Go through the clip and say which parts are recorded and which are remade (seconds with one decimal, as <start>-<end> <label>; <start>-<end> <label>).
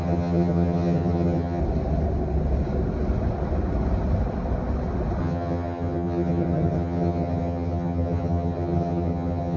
0.0-1.6 remade; 1.6-5.2 recorded; 5.2-9.6 remade